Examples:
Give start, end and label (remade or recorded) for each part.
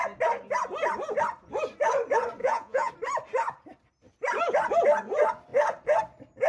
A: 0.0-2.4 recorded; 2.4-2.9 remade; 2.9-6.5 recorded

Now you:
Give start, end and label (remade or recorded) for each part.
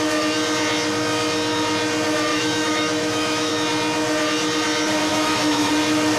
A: 0.0-2.3 recorded; 2.3-3.5 remade; 3.5-5.1 recorded; 5.1-5.7 remade; 5.7-6.2 recorded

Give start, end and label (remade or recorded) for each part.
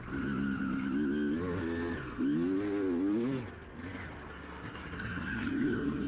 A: 0.0-4.3 recorded; 4.3-6.1 remade